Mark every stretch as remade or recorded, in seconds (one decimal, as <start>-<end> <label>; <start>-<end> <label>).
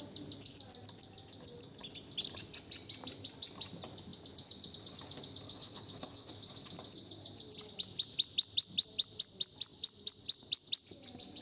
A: 0.0-5.5 recorded; 5.5-6.3 remade; 6.3-11.4 recorded